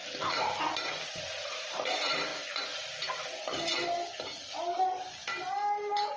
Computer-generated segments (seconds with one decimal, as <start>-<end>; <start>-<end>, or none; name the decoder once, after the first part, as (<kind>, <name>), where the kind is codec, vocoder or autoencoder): 1.1-2.3 (vocoder, BigVGAN v2)